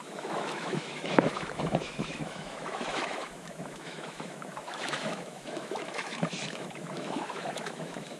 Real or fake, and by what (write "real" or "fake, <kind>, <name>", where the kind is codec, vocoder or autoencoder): fake, autoencoder, DAC-VAE